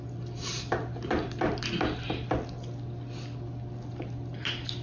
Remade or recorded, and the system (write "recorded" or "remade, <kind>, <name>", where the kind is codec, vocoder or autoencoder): recorded